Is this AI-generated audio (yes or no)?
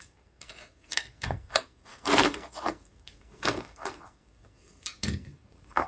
yes